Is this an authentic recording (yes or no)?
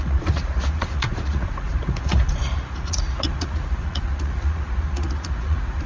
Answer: no